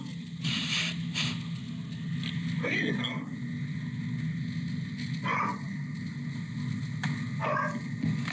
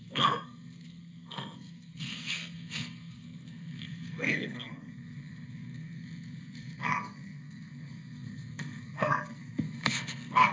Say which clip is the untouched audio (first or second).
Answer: first